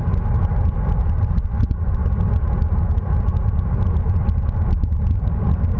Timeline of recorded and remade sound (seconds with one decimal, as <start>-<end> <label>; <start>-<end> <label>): 0.0-5.8 recorded